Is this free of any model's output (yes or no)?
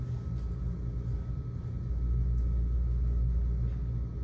yes